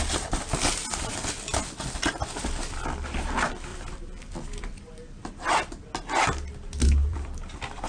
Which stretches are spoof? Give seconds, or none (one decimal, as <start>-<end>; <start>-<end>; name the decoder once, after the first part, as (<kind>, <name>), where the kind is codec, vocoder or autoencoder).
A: 2.4-3.2 (vocoder, BigVGAN v2); 3.7-4.3; 7.1-7.9